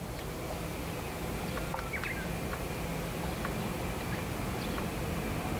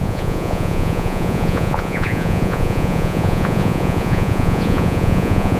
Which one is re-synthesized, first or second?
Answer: second